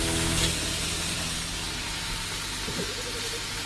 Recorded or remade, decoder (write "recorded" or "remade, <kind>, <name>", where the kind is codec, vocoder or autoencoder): recorded